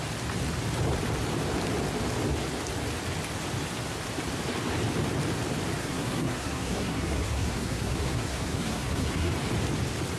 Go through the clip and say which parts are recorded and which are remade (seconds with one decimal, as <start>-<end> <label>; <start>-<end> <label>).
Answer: 0.0-5.8 recorded; 5.8-9.3 remade; 9.3-10.2 recorded